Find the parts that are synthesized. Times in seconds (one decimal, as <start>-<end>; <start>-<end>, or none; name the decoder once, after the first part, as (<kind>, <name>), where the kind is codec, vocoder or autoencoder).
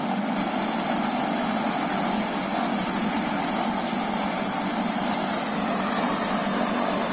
none